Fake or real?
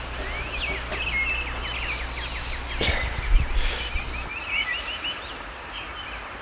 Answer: real